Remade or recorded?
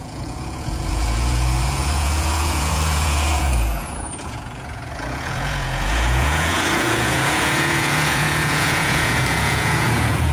remade